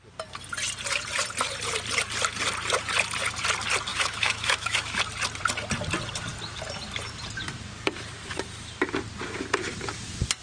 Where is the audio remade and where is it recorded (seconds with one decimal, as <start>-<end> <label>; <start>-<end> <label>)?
0.0-3.9 recorded; 3.9-5.0 remade; 5.0-10.4 recorded